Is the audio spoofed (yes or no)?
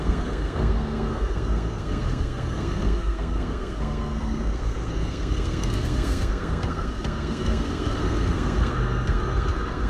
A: yes